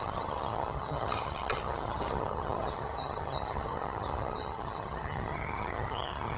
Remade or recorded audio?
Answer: remade